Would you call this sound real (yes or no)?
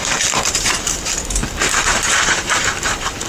no